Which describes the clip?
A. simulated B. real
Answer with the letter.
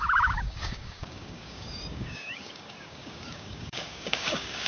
A